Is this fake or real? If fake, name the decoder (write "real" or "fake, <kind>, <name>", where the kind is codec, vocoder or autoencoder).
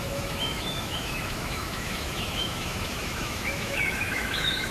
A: fake, autoencoder, DAC-VAE